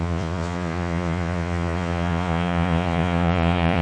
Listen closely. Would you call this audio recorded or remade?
remade